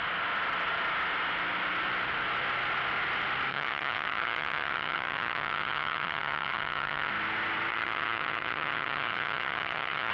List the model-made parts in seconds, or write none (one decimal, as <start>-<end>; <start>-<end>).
3.5-7.1; 7.7-10.1